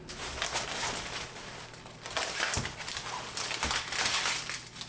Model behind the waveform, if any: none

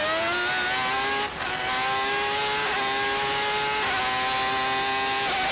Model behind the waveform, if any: none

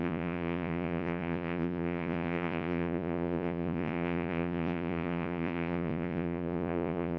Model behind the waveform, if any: vocoder, Vocos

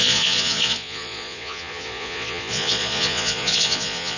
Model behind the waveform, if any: vocoder, Vocos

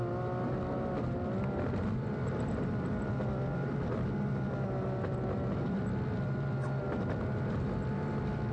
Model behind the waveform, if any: none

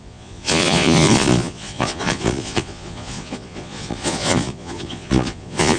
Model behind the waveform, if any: vocoder, Vocos